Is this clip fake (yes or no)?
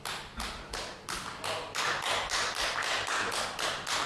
no